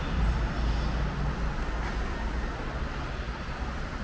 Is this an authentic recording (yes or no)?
yes